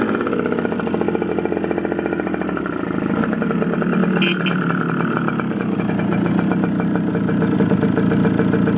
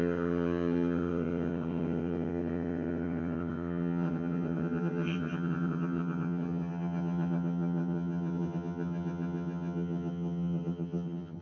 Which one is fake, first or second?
second